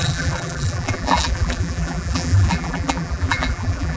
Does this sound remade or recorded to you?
remade